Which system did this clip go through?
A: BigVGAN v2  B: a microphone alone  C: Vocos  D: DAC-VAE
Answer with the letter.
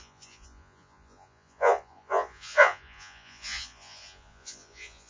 C